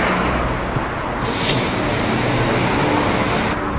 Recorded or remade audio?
recorded